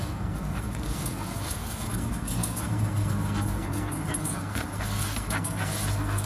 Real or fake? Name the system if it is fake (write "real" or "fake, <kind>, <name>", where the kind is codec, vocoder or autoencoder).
fake, codec, SNAC